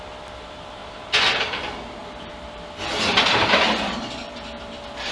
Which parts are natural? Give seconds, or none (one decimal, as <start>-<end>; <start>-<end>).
0.0-0.8; 1.6-5.1